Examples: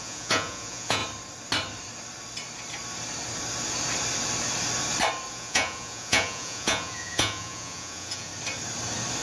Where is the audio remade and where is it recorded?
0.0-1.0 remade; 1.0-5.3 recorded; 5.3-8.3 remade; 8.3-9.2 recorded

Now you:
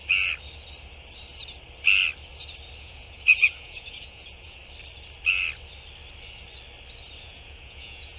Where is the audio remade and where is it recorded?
0.0-2.8 recorded; 2.8-4.6 remade; 4.6-7.2 recorded; 7.2-8.2 remade

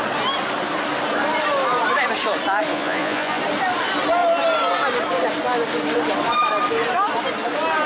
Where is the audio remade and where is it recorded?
0.0-2.7 recorded; 2.7-3.4 remade; 3.4-7.9 recorded

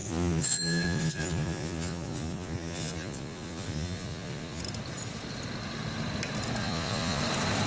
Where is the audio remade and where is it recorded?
0.0-4.6 remade; 4.6-6.6 recorded; 6.6-7.2 remade; 7.2-7.7 recorded

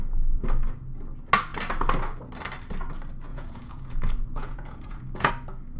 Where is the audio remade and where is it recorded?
0.0-3.3 recorded; 3.3-5.3 remade; 5.3-5.8 recorded

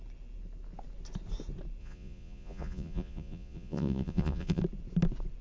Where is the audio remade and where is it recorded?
0.0-1.8 recorded; 1.8-4.6 remade; 4.6-5.4 recorded

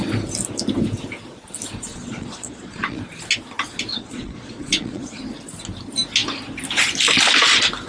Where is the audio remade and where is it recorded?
0.0-1.9 recorded; 1.9-3.0 remade; 3.0-3.9 recorded; 3.9-5.2 remade; 5.2-7.9 recorded

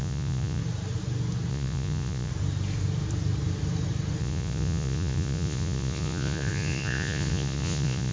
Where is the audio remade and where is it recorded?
0.0-0.6 remade; 0.6-1.5 recorded; 1.5-2.3 remade; 2.3-4.2 recorded; 4.2-8.1 remade